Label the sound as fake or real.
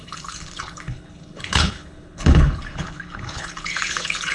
fake